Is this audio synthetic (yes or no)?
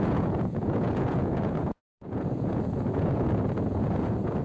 yes